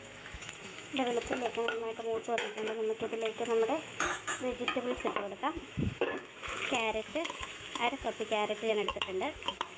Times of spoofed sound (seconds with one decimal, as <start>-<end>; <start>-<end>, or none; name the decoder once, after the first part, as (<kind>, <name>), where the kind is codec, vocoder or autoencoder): 0.0-4.4 (autoencoder, DAC-VAE); 5.2-9.8